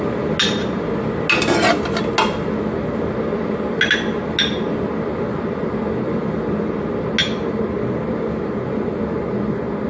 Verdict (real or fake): real